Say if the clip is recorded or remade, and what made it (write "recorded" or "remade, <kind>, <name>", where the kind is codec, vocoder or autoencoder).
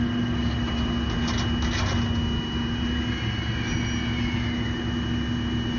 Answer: recorded